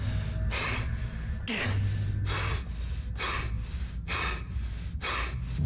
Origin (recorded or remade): recorded